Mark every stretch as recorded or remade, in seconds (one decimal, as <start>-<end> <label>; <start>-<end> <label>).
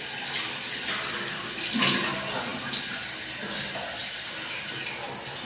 0.0-4.0 recorded; 4.0-4.7 remade; 4.7-5.4 recorded